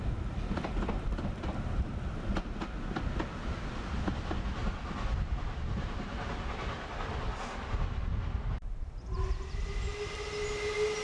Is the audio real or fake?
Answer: real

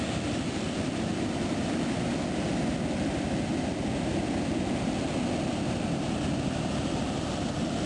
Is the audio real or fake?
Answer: real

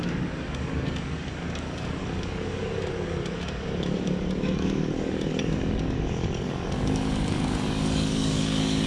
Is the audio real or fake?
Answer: fake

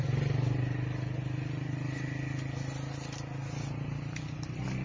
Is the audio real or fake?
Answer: real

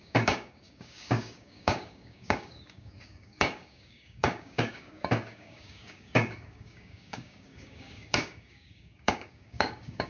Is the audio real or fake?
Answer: fake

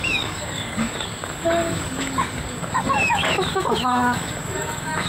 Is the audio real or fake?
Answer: fake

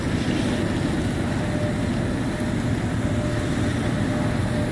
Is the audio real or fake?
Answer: real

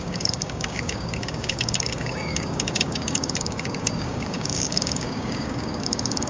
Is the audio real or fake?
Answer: fake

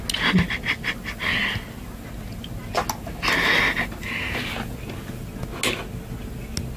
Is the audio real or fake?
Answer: real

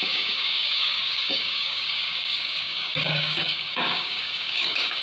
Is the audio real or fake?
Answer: fake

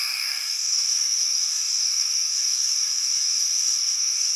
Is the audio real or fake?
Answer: fake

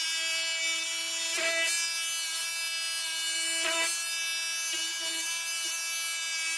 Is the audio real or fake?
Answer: real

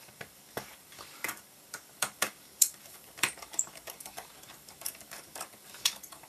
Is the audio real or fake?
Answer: fake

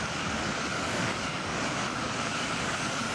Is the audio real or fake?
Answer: fake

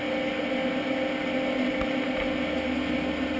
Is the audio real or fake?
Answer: real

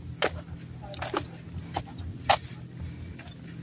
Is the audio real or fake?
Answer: real